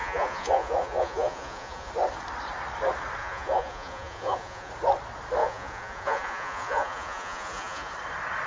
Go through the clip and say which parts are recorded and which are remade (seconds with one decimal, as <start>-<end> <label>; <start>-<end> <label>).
0.0-1.9 remade; 1.9-3.2 recorded; 3.2-4.7 remade; 4.7-5.4 recorded; 5.4-7.9 remade; 7.9-8.5 recorded